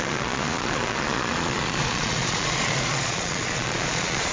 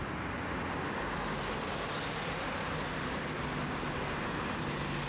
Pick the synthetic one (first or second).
first